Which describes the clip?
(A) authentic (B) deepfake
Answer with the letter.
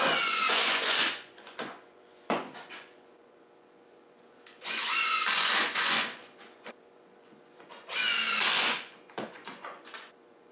B